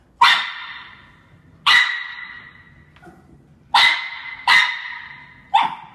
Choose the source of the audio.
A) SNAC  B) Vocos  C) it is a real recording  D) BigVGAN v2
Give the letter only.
C